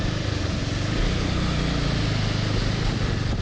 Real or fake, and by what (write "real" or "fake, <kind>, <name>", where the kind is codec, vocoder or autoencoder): real